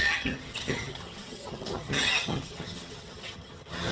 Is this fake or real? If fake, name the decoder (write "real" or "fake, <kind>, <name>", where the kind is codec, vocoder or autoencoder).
fake, vocoder, HiFi-GAN